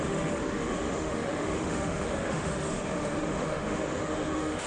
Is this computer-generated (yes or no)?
yes